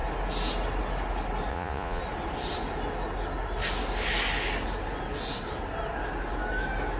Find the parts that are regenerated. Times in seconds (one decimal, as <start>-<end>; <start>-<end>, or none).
1.5-2.0